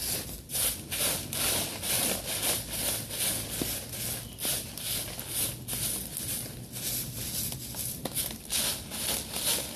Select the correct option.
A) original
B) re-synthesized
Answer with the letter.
A